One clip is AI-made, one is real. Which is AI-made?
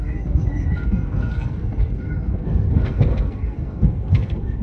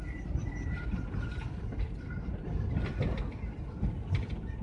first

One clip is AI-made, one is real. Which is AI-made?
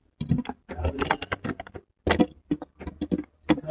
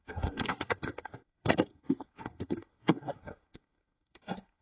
second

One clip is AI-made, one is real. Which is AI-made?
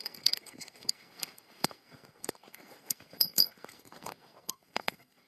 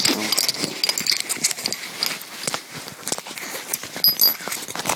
first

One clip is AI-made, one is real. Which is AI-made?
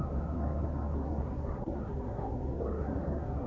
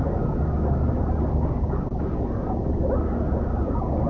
first